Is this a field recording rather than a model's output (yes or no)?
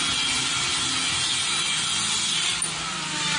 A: yes